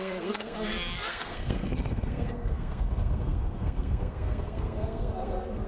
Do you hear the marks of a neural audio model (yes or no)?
yes